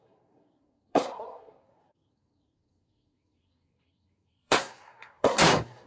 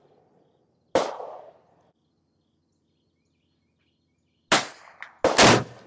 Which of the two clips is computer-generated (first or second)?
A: first